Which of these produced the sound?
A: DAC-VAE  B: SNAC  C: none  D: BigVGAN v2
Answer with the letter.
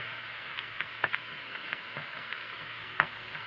B